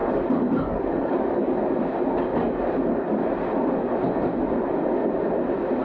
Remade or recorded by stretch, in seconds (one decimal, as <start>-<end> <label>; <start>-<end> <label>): 0.0-1.6 remade; 1.6-2.9 recorded; 2.9-3.3 remade; 3.3-5.8 recorded